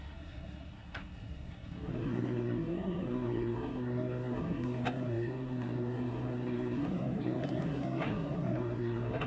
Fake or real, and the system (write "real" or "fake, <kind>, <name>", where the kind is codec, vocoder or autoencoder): fake, codec, SNAC